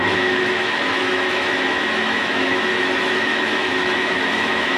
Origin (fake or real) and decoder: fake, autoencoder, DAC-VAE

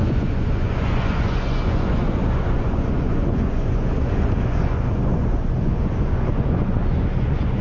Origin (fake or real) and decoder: fake, vocoder, Vocos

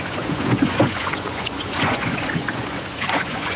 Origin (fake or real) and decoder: fake, vocoder, Vocos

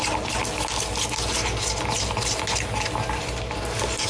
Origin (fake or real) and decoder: real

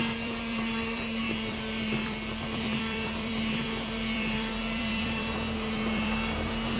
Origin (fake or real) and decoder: fake, vocoder, BigVGAN v2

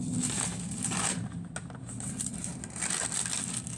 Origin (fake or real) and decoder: real